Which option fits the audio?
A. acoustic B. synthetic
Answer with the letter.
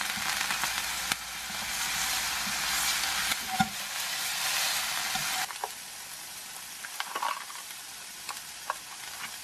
A